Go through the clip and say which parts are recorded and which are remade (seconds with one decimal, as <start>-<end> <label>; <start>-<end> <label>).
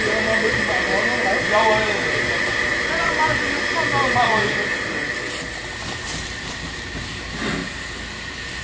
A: 0.0-7.6 recorded; 7.6-8.6 remade